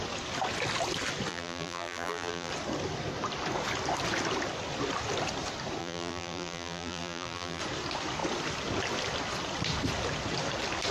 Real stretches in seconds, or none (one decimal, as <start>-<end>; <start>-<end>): 0.0-1.3; 2.5-5.8; 7.6-10.9